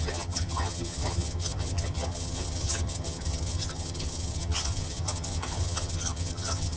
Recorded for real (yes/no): no